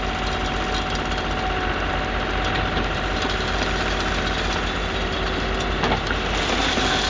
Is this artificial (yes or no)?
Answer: no